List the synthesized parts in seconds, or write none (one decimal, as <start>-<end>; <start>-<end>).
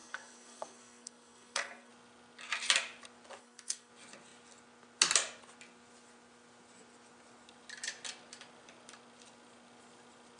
0.0-1.9; 3.4-3.9